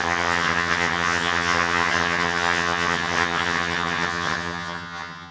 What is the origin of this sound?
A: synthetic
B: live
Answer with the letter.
A